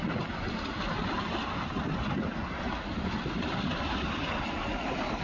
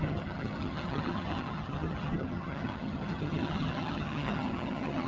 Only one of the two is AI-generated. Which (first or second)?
second